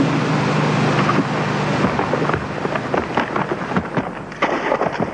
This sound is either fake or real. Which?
real